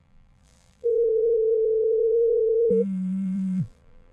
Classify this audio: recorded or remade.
remade